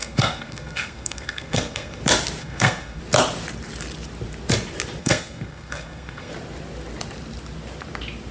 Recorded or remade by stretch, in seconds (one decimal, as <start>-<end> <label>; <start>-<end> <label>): 0.0-2.0 remade; 2.0-2.4 recorded; 2.4-3.0 remade; 3.0-5.0 recorded; 5.0-6.3 remade; 6.3-8.3 recorded